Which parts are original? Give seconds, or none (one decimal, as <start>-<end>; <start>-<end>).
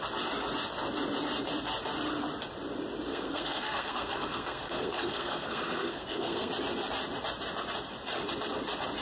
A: 0.0-3.1; 6.5-9.0